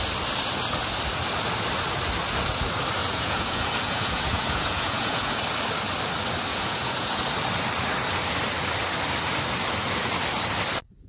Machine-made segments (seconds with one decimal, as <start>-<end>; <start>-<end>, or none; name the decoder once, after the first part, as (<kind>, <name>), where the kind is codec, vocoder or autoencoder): 3.0-5.4 (vocoder, Vocos); 6.5-7.2